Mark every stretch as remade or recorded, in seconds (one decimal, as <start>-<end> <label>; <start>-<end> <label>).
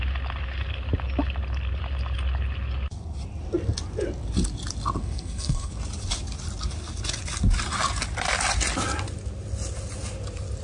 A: 0.0-5.0 recorded; 5.0-5.7 remade; 5.7-10.6 recorded